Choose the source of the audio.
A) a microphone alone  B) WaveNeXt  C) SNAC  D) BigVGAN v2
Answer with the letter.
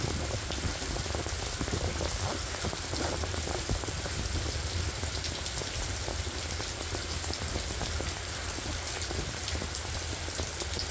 A